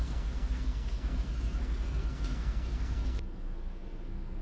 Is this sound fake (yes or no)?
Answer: yes